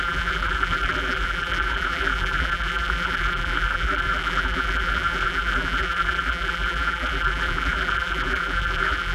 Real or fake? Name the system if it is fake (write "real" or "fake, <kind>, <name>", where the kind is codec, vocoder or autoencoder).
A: fake, vocoder, BigVGAN v2